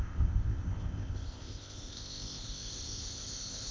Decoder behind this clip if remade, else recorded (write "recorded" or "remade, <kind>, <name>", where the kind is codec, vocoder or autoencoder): remade, codec, ZipCodec